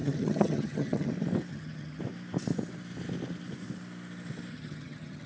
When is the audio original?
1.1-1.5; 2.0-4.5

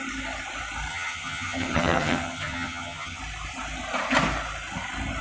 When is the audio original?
0.0-0.9; 3.2-5.2

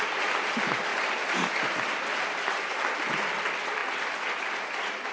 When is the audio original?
0.0-5.1

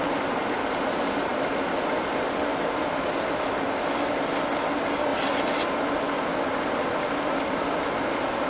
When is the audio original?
0.0-8.5

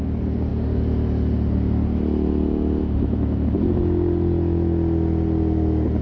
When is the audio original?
0.0-6.0

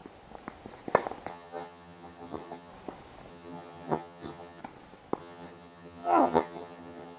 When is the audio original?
0.0-1.3; 2.7-3.3; 4.6-5.2